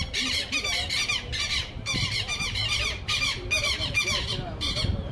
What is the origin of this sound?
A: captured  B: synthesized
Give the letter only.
B